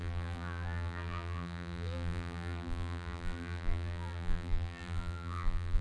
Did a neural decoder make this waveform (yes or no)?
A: yes